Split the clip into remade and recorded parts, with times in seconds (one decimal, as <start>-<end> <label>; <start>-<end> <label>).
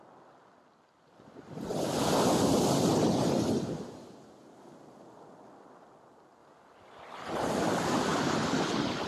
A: 0.0-8.1 recorded; 8.1-8.7 remade; 8.7-9.1 recorded